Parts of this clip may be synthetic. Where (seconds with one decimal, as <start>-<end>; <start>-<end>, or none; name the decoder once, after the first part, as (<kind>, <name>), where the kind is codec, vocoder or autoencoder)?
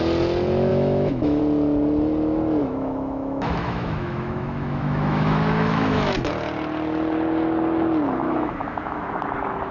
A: 0.7-1.4 (autoencoder, DAC-VAE); 2.6-6.3; 8.2-9.1